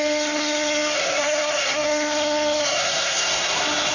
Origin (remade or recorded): remade